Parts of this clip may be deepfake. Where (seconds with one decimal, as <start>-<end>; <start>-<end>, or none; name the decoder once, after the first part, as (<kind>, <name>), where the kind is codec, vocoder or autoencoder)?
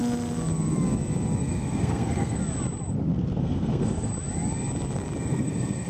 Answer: 1.4-2.4 (codec, SNAC); 3.4-4.1; 5.2-5.9